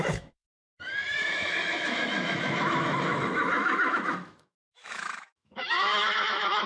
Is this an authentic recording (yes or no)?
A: no